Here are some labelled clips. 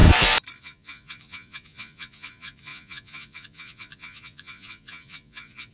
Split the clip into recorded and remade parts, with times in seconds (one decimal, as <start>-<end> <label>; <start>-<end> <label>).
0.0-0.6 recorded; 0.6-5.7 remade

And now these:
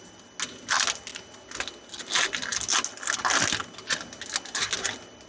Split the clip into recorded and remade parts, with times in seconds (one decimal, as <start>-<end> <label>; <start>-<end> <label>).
0.0-5.3 recorded

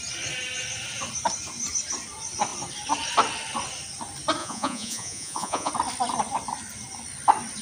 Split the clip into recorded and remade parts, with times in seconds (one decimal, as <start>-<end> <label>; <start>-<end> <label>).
0.0-4.4 recorded; 4.4-5.7 remade; 5.7-7.6 recorded

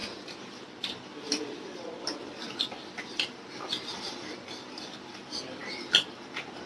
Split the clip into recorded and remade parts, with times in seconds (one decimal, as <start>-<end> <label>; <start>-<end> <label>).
0.0-6.7 recorded

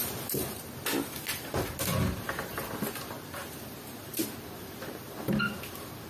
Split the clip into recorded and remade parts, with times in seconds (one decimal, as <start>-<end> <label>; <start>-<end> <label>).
0.0-6.1 recorded

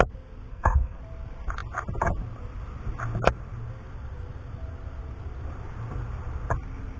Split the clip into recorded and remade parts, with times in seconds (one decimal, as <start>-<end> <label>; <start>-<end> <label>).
0.0-0.5 recorded; 0.5-1.0 remade; 1.0-7.0 recorded

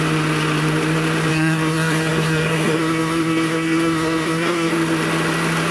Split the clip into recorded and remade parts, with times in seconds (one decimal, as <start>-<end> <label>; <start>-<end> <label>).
0.0-1.3 recorded; 1.3-4.7 remade; 4.7-5.7 recorded

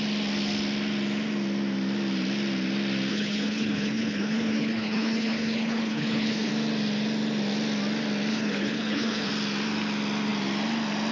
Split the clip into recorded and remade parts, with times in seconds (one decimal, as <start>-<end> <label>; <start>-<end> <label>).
0.0-3.1 recorded; 3.1-6.5 remade; 6.5-8.3 recorded; 8.3-9.3 remade; 9.3-11.1 recorded